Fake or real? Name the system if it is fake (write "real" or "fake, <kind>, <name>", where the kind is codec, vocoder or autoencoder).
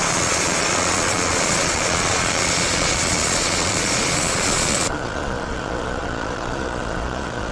fake, vocoder, Vocos